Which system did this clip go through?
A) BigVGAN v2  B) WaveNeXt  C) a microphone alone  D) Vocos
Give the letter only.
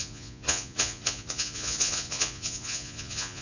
D